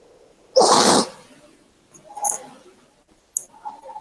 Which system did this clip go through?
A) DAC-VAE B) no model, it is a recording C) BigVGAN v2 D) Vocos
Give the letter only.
B